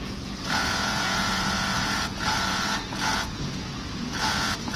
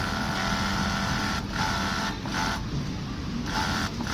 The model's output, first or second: first